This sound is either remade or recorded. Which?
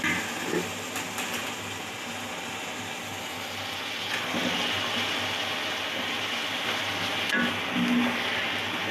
recorded